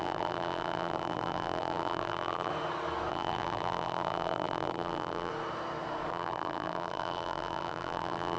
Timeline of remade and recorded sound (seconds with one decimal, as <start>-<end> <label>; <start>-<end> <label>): 0.0-2.5 remade; 2.5-3.1 recorded; 3.1-5.3 remade; 5.3-6.1 recorded; 6.1-8.4 remade